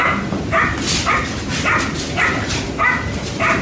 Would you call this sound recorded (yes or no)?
yes